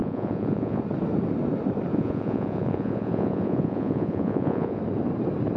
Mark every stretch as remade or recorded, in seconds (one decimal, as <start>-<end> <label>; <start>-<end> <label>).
0.0-0.8 remade; 0.8-1.9 recorded; 1.9-4.8 remade; 4.8-5.6 recorded